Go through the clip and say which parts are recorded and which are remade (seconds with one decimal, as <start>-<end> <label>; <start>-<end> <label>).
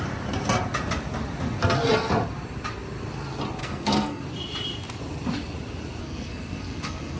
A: 0.0-3.6 recorded; 3.6-4.2 remade; 4.2-6.0 recorded; 6.0-7.2 remade